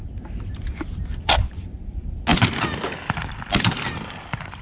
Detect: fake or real real